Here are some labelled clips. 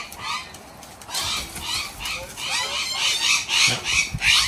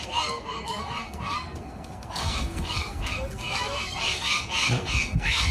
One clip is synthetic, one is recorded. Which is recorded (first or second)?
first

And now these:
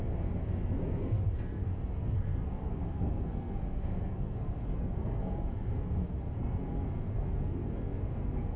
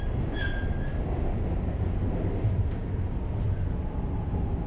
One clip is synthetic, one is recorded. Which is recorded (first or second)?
second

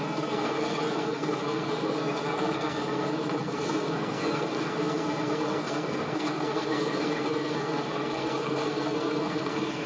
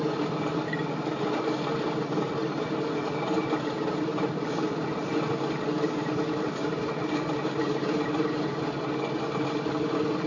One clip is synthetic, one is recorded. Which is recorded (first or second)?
second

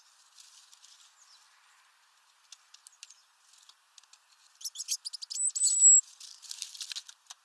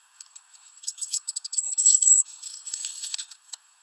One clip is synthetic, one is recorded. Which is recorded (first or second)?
first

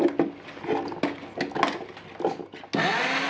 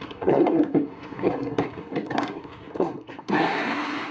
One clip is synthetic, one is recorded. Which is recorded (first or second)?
first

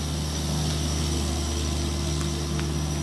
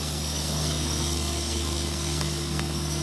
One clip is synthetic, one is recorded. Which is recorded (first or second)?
first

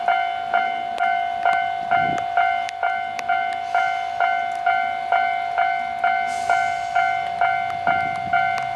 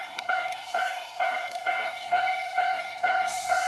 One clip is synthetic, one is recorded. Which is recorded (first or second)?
first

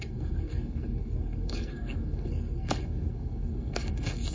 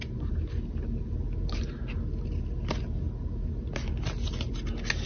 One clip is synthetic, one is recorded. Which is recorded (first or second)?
second